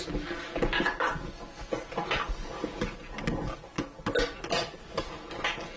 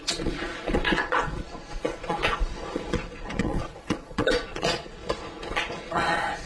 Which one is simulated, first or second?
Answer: second